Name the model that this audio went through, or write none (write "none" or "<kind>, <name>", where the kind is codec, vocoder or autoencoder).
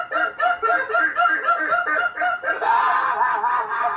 none